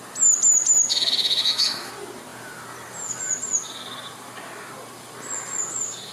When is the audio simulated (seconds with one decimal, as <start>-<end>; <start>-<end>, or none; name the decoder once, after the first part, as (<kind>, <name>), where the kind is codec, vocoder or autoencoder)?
0.9-1.9 (autoencoder, DAC-VAE)